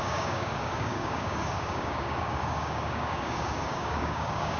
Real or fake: fake